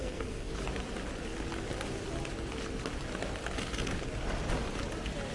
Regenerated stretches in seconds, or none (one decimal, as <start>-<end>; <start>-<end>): 0.0-0.5